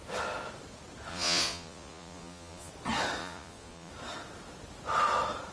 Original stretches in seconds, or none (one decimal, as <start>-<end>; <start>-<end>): 0.0-1.1; 2.7-3.2; 3.9-5.5

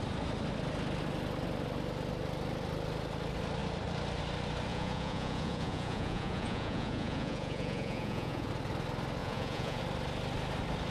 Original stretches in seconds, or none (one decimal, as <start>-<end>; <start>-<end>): 0.0-4.7; 8.5-9.2; 9.8-10.9

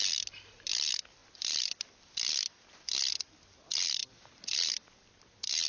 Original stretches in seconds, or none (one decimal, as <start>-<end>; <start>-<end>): 0.0-5.7

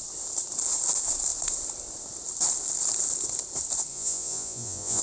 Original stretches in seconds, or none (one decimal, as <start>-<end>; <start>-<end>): 0.0-3.9

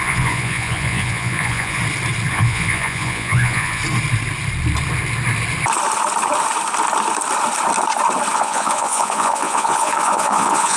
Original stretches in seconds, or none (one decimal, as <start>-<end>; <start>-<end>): 1.8-2.3; 3.8-8.3